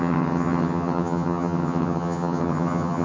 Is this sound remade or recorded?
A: remade